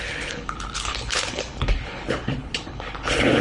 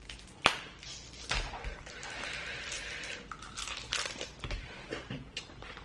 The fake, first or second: first